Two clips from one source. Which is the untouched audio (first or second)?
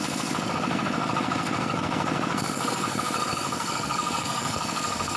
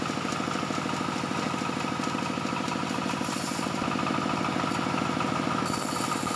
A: second